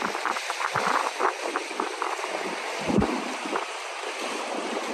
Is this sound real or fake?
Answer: real